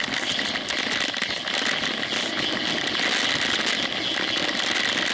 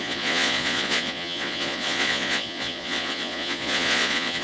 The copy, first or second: second